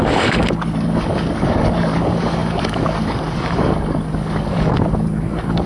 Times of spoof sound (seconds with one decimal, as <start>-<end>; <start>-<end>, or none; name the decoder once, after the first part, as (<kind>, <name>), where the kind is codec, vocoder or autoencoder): 0.0-5.7 (codec, DAC)